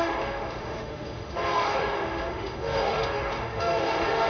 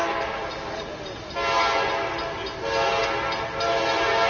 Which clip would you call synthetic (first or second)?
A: first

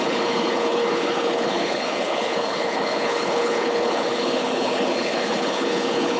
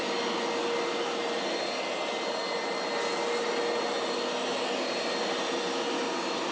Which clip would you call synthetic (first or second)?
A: first